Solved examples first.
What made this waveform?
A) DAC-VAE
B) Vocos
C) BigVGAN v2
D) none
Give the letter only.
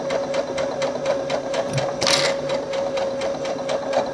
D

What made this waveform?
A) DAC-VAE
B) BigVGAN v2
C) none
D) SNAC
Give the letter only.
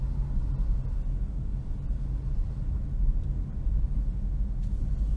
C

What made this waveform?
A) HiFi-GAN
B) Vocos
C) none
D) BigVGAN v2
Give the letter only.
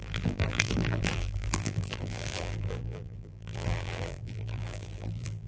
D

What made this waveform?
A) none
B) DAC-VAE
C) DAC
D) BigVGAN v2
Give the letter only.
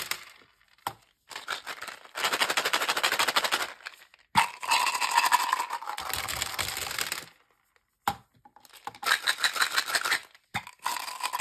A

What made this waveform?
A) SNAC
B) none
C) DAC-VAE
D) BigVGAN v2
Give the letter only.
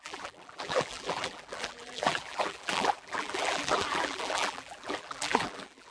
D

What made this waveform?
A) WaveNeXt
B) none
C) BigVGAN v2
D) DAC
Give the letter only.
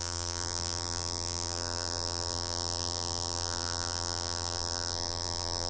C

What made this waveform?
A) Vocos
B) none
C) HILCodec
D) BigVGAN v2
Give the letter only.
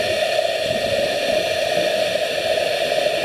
D